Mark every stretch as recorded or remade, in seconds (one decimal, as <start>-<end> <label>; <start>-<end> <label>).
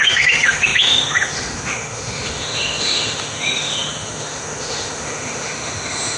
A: 0.0-6.2 remade